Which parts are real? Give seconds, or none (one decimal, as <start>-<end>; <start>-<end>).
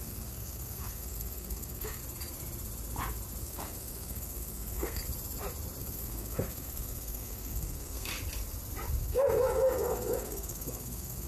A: 2.0-3.4; 5.0-5.8; 8.1-9.0